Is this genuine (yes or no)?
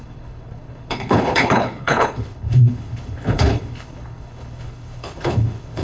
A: no